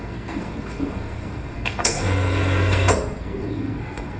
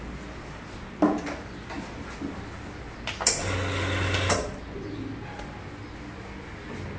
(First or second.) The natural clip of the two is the second